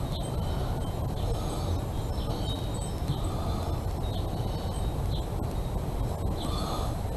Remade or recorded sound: recorded